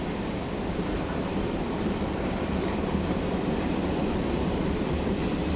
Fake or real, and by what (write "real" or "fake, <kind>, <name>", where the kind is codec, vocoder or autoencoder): fake, vocoder, BigVGAN v2